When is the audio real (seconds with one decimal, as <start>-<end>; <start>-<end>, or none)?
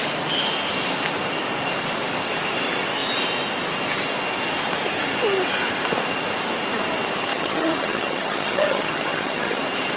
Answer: 0.0-7.3; 9.6-10.0